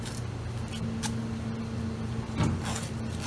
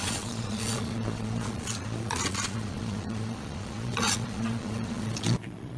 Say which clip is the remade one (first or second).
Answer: second